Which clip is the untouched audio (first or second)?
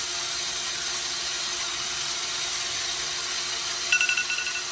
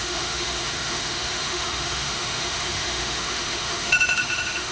first